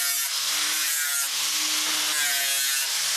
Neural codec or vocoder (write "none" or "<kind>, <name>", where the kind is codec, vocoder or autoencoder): none